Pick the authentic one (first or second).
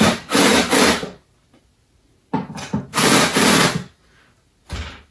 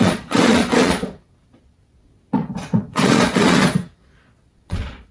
first